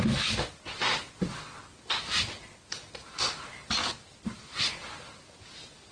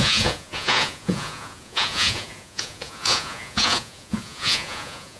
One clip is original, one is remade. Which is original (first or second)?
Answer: first